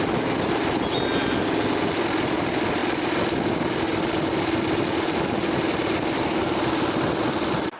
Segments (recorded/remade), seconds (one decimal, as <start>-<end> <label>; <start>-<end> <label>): 0.0-7.8 recorded

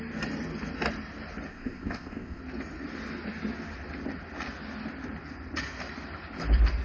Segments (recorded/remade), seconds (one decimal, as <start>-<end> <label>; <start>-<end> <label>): 0.0-1.5 recorded; 1.5-2.4 remade; 2.4-6.8 recorded

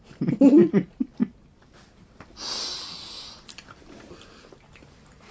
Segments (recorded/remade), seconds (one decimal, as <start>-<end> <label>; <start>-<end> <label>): 0.0-5.3 recorded